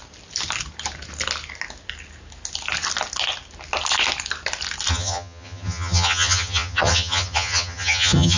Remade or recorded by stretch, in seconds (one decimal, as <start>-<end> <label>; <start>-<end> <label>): 0.0-4.9 recorded; 4.9-8.4 remade